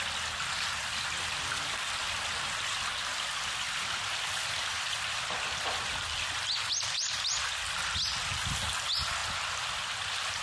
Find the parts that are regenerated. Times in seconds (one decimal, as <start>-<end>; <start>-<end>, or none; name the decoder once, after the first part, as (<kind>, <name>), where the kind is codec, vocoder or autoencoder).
3.1-7.5 (vocoder, BigVGAN v2); 9.2-10.4